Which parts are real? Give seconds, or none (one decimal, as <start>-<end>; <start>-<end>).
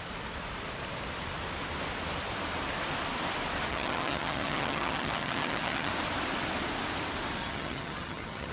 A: 0.0-3.7; 5.9-7.4